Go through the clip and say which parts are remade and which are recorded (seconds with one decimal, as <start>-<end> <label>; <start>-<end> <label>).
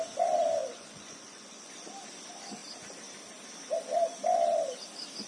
0.0-0.6 recorded; 0.6-1.7 remade; 1.7-5.3 recorded